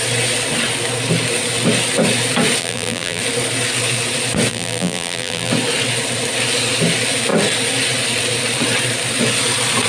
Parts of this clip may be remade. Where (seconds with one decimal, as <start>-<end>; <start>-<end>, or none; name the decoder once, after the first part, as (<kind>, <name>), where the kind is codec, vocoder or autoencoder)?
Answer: 2.6-3.2 (vocoder, BigVGAN v2); 4.5-5.5